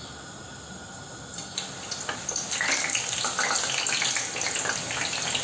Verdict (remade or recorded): recorded